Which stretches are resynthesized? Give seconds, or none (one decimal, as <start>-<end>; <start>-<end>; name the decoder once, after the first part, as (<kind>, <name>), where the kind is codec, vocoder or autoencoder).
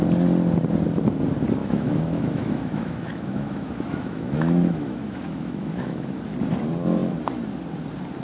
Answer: 1.6-6.2 (autoencoder, DAC-VAE)